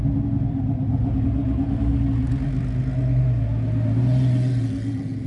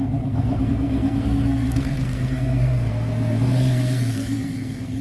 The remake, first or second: second